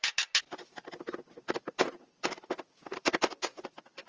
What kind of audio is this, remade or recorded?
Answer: recorded